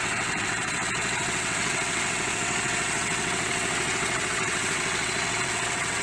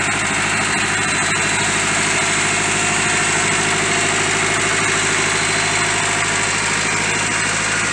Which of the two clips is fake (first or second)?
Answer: first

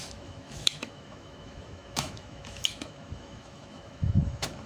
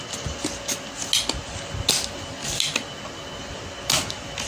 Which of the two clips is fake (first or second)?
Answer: first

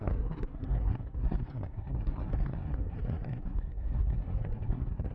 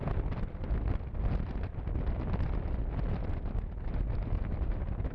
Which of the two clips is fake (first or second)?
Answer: first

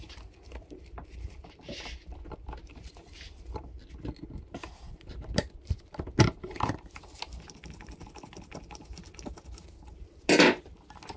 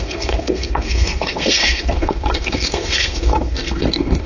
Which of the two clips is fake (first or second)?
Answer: second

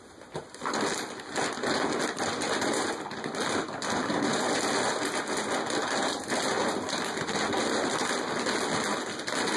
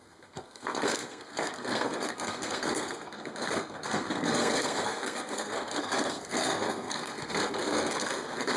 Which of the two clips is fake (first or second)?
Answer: second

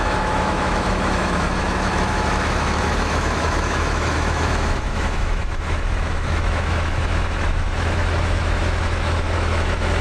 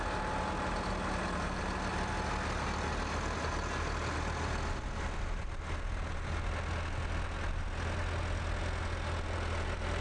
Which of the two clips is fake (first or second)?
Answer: first